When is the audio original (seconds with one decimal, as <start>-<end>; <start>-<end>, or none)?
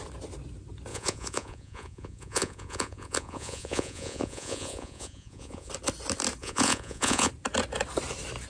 0.0-0.9; 5.7-6.4; 7.3-8.5